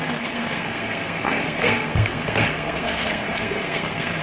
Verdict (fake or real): fake